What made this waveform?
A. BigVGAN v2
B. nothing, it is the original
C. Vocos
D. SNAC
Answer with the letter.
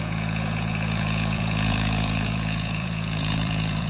C